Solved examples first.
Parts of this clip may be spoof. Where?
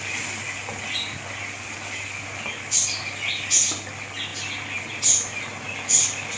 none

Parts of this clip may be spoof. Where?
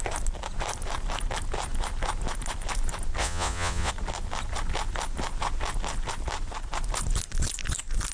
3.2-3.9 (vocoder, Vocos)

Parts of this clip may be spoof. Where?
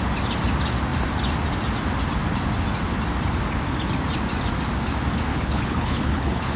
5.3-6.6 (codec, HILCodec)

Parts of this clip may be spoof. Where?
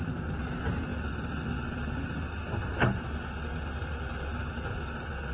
none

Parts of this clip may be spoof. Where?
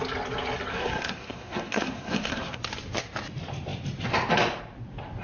0.7-2.6 (codec, SNAC)